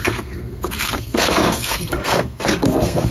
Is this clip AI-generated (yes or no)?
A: yes